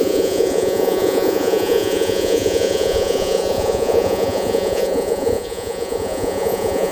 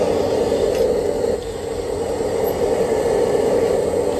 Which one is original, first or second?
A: second